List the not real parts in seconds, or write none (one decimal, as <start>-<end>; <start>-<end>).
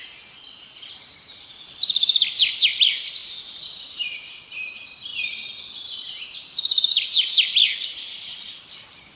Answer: 2.3-5.1; 8.1-9.2